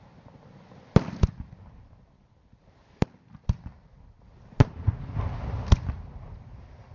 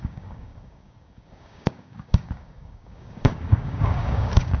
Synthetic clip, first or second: second